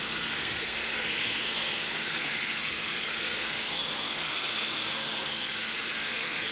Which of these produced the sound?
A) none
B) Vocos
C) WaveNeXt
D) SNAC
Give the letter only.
D